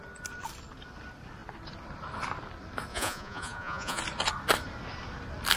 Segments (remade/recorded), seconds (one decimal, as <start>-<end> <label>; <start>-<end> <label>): 0.0-2.9 recorded; 2.9-4.0 remade; 4.0-5.6 recorded